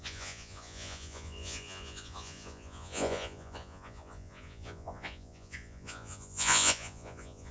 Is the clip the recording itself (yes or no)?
no